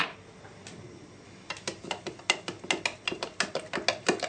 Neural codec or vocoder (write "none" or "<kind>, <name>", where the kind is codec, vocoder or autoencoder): none